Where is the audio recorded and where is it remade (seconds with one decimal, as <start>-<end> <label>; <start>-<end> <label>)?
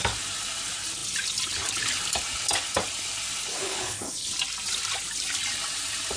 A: 0.0-3.5 recorded; 3.5-4.3 remade; 4.3-6.2 recorded